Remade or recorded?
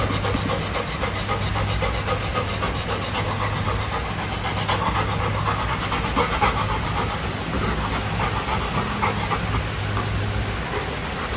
recorded